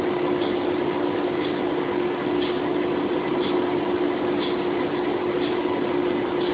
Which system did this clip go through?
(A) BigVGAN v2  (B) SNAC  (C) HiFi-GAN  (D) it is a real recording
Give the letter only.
D